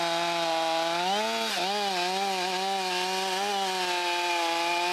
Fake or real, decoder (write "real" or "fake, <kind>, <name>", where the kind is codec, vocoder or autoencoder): real